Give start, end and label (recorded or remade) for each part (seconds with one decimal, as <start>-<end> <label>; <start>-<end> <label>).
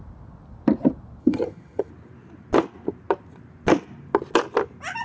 0.0-1.2 recorded; 1.2-1.9 remade; 1.9-5.0 recorded